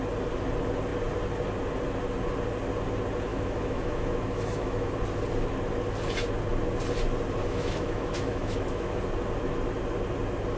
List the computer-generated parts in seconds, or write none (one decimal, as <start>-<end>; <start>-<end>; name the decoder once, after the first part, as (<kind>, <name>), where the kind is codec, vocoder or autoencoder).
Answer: 3.3-4.9 (autoencoder, DAC-VAE); 7.4-9.0